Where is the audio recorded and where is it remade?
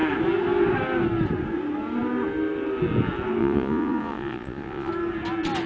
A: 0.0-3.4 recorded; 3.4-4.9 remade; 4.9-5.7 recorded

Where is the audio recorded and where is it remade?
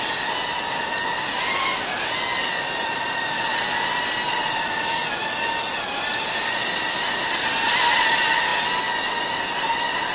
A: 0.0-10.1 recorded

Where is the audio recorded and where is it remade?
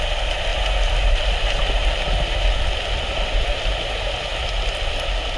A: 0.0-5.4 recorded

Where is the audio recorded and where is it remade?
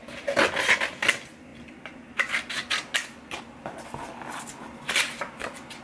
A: 0.0-5.8 recorded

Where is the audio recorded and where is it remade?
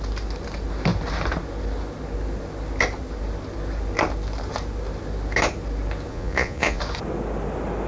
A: 0.0-6.1 recorded; 6.1-6.8 remade; 6.8-7.9 recorded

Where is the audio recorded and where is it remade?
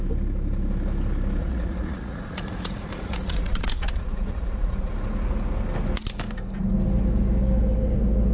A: 0.0-1.4 recorded; 1.4-4.9 remade; 4.9-8.3 recorded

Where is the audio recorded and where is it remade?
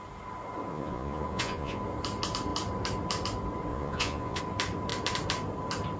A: 0.0-0.7 recorded; 0.7-1.8 remade; 1.8-3.7 recorded; 3.7-4.4 remade; 4.4-6.0 recorded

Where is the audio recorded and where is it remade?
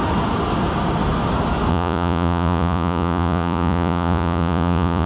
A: 0.0-1.7 recorded; 1.7-5.1 remade